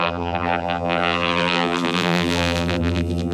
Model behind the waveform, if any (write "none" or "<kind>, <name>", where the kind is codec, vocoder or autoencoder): vocoder, BigVGAN v2